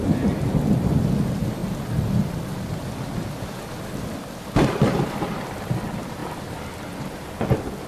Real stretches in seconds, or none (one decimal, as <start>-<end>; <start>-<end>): 0.0-7.9